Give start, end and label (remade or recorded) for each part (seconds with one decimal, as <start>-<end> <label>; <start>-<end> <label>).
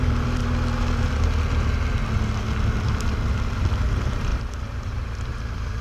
0.0-0.4 remade; 0.4-3.9 recorded; 3.9-5.8 remade